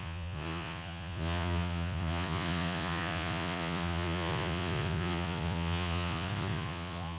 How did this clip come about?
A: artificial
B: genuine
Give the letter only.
A